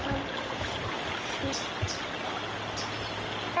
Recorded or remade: recorded